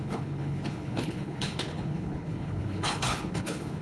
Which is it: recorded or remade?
remade